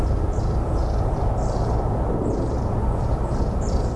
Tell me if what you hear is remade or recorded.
remade